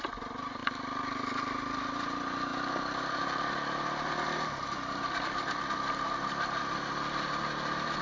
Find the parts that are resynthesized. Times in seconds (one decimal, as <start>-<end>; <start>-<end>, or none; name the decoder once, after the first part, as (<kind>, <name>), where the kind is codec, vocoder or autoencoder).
none